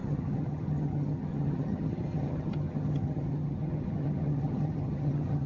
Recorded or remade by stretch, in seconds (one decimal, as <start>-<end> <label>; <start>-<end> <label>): 0.0-5.5 remade